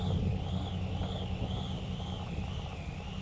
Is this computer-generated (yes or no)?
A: no